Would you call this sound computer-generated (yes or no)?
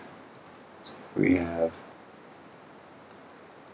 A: no